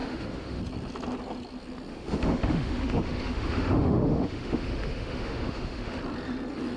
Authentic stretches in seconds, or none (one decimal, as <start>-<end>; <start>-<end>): 0.6-1.9; 6.0-6.8